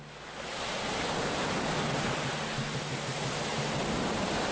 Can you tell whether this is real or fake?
real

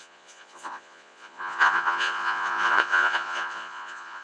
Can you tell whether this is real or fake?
fake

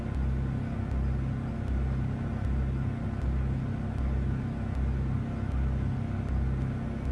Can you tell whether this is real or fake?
real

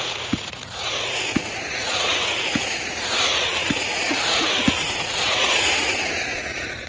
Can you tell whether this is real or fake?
fake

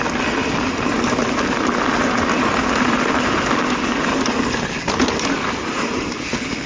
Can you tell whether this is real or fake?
real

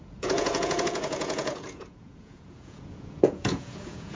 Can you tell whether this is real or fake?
fake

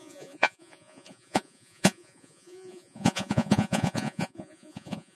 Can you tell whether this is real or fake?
fake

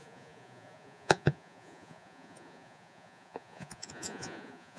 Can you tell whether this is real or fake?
fake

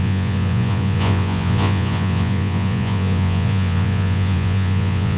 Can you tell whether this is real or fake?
fake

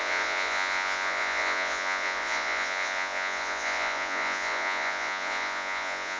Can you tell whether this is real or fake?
fake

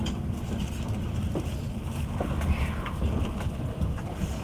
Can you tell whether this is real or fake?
real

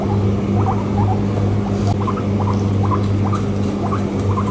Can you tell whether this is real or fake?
real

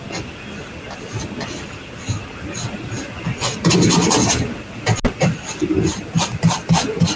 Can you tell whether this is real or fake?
real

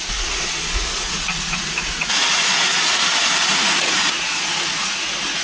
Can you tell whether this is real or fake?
fake